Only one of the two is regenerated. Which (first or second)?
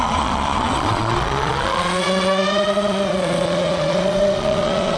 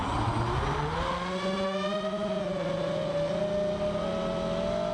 first